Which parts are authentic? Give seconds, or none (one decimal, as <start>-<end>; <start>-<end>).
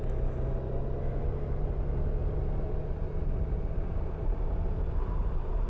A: 0.0-5.7